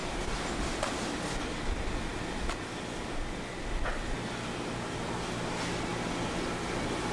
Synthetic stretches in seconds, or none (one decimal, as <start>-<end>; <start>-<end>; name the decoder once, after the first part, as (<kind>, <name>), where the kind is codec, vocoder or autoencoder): none